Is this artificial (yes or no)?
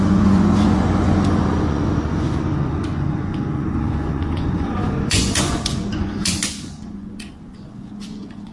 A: yes